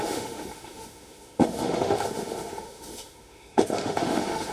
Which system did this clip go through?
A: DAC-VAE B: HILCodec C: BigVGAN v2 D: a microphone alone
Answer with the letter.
A